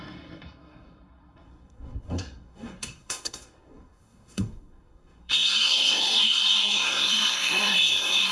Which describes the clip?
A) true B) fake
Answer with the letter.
B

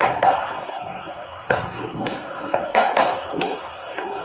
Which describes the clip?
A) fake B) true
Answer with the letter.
A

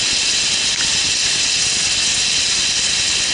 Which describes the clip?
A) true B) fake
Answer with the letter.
A